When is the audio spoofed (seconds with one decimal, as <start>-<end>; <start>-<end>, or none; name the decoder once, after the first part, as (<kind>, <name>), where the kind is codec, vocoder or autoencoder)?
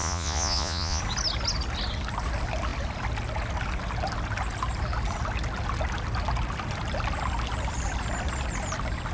0.0-1.0 (vocoder, Vocos)